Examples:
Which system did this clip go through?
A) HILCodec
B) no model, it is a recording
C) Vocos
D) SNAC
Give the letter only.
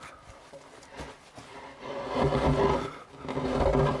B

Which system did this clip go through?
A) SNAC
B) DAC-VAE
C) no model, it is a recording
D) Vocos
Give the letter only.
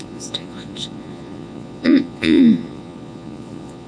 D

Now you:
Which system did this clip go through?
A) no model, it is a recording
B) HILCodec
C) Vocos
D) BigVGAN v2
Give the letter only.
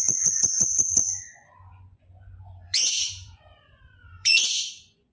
C